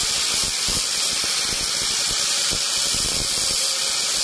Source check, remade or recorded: recorded